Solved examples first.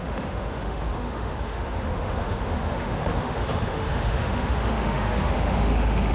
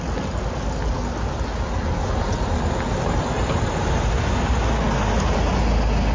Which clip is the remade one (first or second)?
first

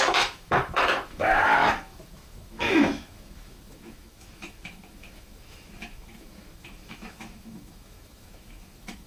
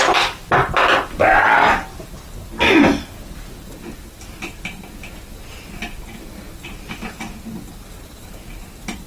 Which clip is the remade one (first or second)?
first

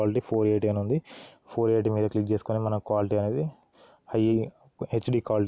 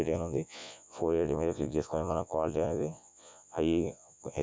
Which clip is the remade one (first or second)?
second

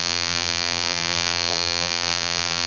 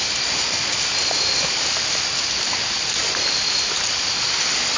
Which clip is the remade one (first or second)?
first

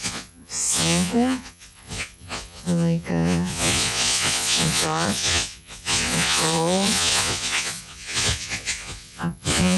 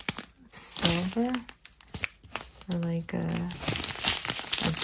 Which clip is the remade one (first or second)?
first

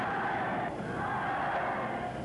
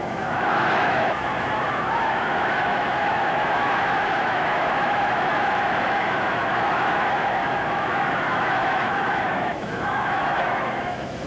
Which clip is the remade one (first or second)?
second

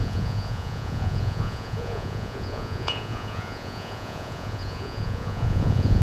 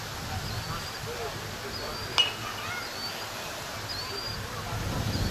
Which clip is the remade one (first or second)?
first